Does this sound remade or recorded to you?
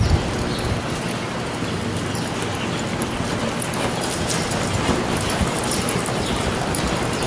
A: recorded